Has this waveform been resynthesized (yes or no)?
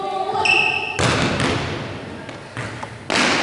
no